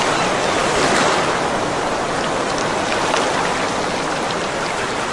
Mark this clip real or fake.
real